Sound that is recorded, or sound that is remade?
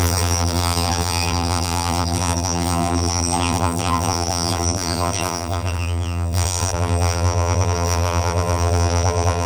remade